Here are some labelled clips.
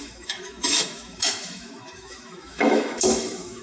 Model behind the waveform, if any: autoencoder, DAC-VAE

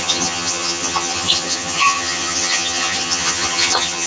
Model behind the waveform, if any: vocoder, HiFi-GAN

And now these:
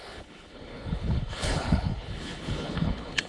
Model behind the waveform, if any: codec, HILCodec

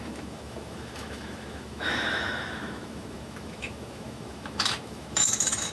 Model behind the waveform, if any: autoencoder, DAC-VAE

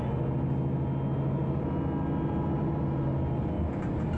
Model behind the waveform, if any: none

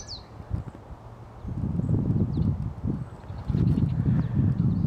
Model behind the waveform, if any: none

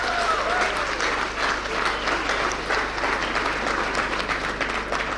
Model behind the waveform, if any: none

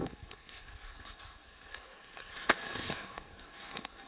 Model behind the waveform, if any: codec, SNAC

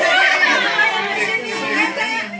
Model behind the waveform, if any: none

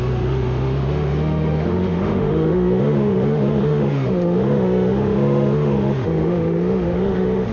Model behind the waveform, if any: autoencoder, DAC-VAE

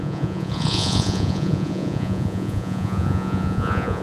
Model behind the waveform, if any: vocoder, Vocos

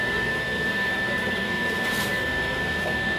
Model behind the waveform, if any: codec, SNAC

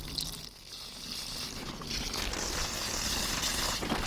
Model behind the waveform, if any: none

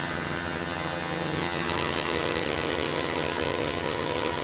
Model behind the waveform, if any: vocoder, HiFi-GAN